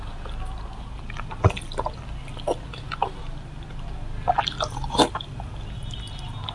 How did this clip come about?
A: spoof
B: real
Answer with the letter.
B